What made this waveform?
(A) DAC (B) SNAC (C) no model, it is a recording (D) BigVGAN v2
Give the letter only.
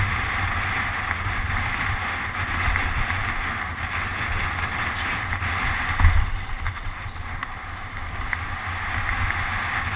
C